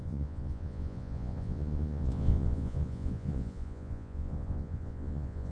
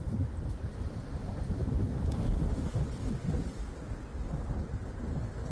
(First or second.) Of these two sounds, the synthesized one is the first